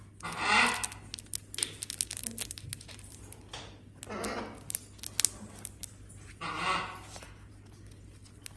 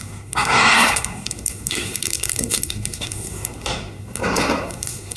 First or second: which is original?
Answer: first